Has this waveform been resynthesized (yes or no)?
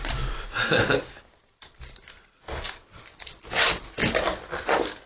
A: no